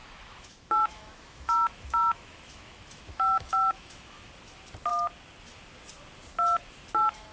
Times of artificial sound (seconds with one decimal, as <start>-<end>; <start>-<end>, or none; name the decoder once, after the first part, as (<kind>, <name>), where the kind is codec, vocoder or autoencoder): 0.0-4.3 (autoencoder, DAC-VAE)